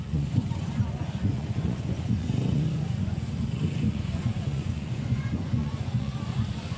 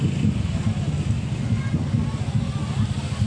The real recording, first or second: second